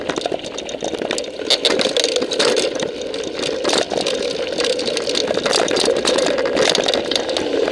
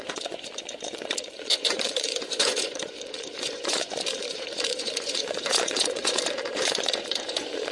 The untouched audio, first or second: first